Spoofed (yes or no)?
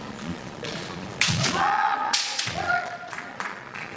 yes